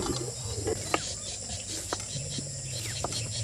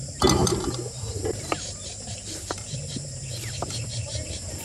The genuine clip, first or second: first